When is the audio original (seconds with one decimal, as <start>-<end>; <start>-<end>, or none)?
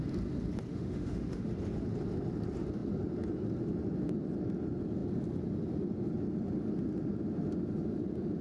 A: 0.0-0.7; 1.5-8.4